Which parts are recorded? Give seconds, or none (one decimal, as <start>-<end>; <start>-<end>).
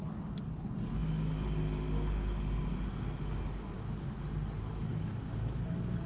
0.0-6.1